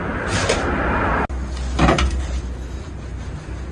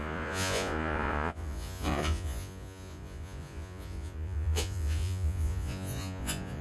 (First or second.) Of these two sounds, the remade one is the second